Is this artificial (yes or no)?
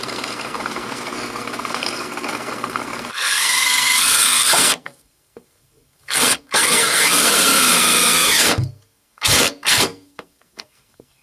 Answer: yes